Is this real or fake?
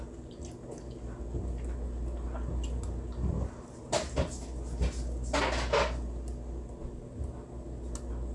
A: real